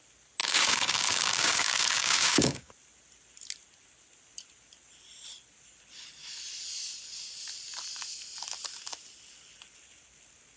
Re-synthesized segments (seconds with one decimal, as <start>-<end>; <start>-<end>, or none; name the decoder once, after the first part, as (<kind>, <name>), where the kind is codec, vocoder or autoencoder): 0.4-2.7 (codec, DAC)